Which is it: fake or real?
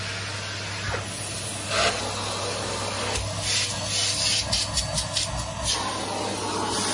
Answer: real